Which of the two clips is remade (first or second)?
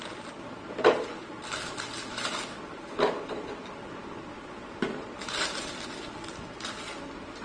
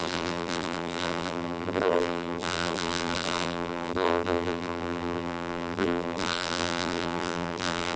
second